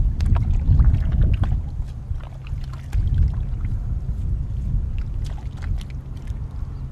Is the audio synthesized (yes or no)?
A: no